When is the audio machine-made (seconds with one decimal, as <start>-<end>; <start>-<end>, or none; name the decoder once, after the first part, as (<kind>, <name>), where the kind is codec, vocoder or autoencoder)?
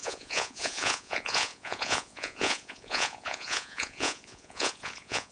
0.0-5.3 (vocoder, Vocos)